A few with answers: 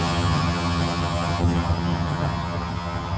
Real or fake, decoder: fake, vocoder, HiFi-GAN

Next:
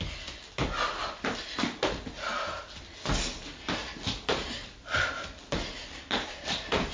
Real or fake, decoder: real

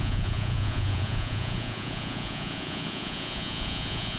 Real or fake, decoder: fake, vocoder, Vocos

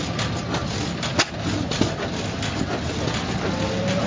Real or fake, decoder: real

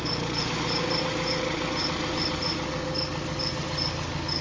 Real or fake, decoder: real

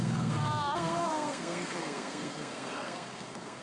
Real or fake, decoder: fake, codec, SNAC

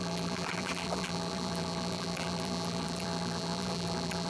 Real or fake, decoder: fake, vocoder, BigVGAN v2